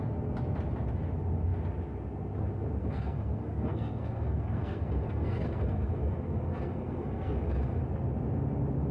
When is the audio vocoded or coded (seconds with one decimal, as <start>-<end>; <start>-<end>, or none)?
2.8-7.8